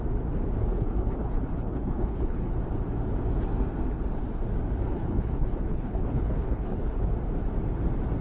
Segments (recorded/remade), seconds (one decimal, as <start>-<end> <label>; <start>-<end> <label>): 0.0-0.6 recorded; 0.6-2.5 remade; 2.5-4.9 recorded; 4.9-7.1 remade; 7.1-8.2 recorded